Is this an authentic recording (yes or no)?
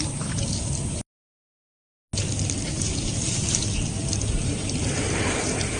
yes